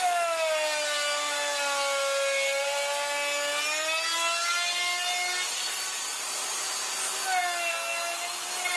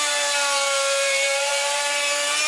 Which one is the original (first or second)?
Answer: first